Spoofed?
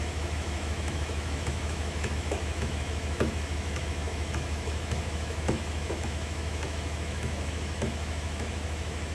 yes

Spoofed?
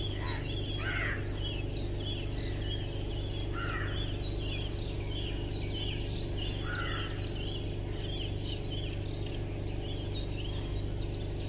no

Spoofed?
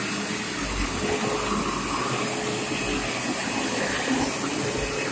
no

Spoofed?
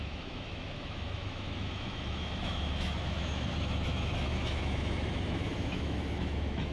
yes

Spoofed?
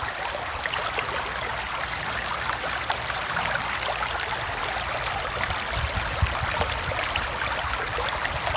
no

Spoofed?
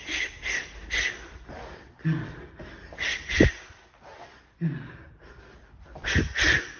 no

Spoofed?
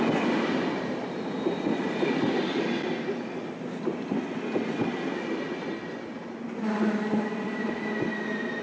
no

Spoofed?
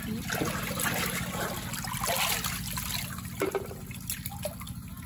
no